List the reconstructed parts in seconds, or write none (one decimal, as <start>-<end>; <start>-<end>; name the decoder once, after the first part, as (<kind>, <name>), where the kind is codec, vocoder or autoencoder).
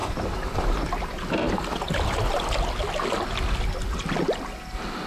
none